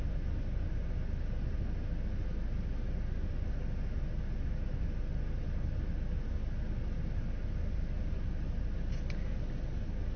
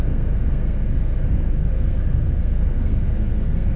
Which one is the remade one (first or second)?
second